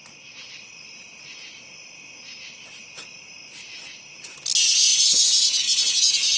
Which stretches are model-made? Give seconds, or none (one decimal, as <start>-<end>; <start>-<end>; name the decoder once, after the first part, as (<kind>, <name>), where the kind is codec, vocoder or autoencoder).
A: none